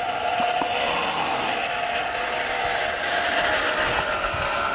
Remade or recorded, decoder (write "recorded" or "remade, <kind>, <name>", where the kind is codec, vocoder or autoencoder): recorded